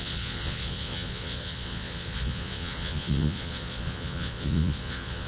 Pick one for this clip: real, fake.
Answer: fake